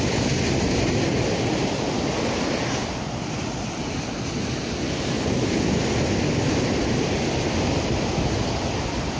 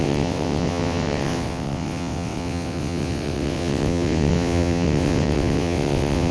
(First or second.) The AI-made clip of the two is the second